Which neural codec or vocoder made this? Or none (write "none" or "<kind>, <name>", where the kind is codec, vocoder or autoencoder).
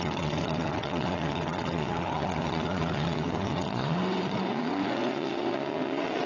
vocoder, WaveNeXt